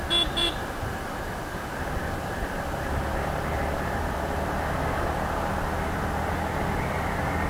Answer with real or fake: real